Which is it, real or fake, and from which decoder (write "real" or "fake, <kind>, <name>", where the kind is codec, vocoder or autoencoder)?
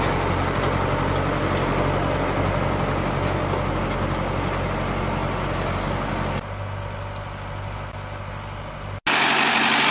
real